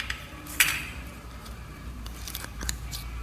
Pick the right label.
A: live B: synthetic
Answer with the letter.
B